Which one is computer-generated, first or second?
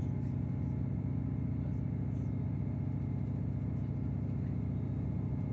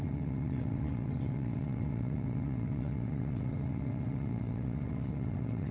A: second